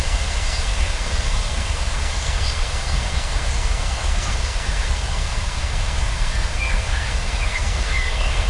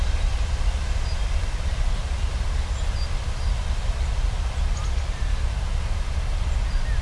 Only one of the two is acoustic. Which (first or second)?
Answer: second